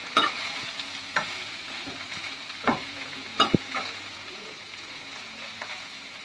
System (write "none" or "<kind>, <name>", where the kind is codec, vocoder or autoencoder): vocoder, Vocos